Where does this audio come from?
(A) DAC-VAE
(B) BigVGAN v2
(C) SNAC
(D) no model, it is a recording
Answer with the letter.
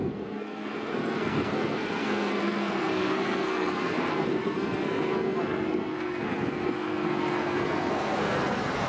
C